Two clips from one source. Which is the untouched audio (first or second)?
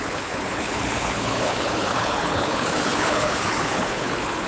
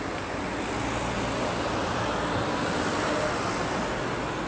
second